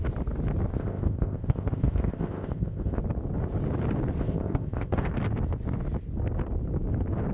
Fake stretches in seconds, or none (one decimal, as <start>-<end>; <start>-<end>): 0.7-3.0; 4.2-5.1